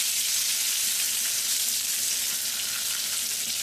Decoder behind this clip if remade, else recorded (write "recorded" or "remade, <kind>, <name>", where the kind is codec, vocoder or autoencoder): recorded